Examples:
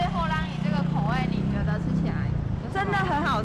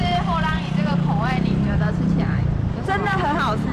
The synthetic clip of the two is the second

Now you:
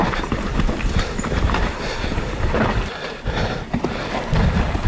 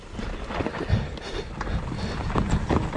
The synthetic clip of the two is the first